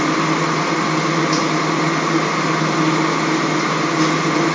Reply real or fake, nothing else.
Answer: real